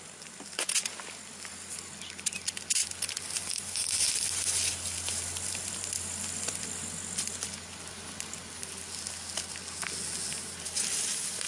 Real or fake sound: real